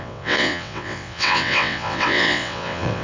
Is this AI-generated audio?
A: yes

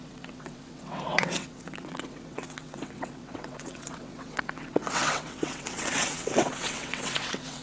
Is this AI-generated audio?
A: yes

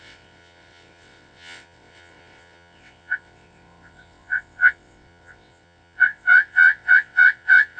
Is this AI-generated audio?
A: yes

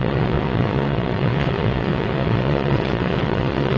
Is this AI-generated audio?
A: yes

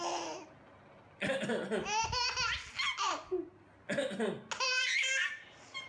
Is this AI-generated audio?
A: no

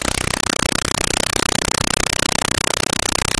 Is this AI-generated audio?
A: no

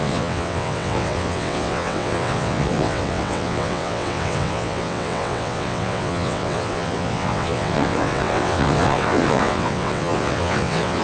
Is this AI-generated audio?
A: yes